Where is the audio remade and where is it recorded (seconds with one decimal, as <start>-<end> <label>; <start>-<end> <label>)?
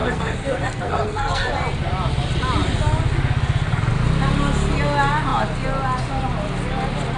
0.0-1.5 remade; 1.5-7.2 recorded